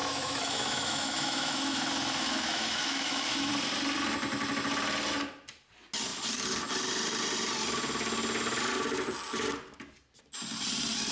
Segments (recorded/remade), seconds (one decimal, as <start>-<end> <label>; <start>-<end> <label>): 0.0-3.5 remade; 3.5-11.1 recorded